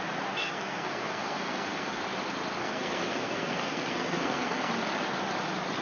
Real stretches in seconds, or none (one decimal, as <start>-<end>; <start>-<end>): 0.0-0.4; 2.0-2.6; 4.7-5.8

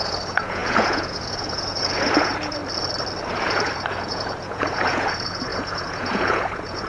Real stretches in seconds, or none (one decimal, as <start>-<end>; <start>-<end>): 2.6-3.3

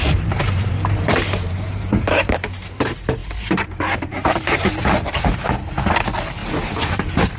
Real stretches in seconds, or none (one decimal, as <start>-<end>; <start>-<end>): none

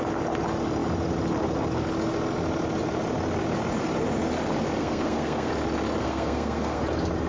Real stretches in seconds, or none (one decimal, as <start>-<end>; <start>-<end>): 0.0-4.8; 5.5-6.0; 6.8-7.3